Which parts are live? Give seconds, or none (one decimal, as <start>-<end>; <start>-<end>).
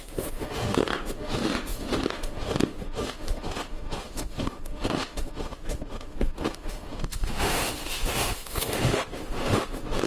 none